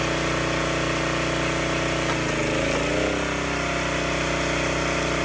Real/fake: real